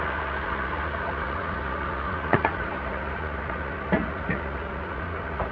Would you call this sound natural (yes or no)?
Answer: no